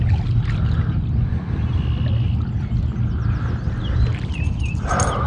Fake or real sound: real